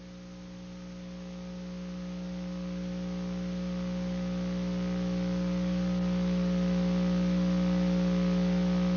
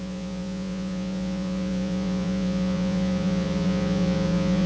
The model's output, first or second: second